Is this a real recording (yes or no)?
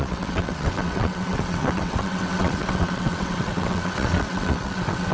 no